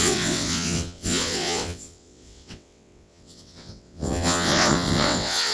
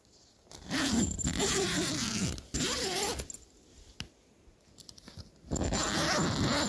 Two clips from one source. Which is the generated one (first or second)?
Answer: first